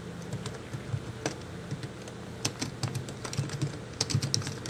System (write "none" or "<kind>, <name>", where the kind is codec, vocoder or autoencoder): none